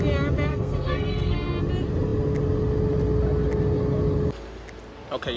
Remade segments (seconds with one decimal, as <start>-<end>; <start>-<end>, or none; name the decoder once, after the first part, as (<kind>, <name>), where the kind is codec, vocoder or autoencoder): 0.5-1.6 (codec, SNAC)